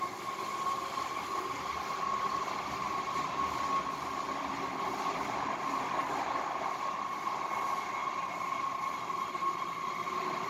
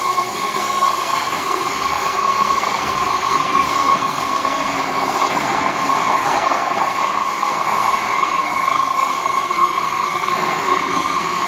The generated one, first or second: second